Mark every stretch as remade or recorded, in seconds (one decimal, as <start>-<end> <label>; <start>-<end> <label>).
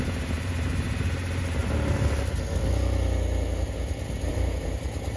0.0-1.6 remade; 1.6-4.3 recorded; 4.3-5.2 remade